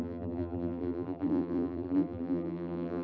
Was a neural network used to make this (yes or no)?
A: yes